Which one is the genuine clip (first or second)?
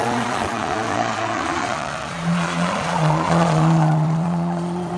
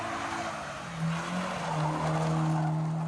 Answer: second